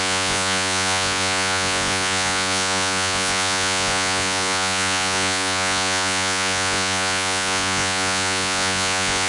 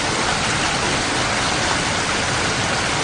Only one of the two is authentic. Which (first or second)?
second